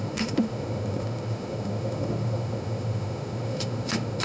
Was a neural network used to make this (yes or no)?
yes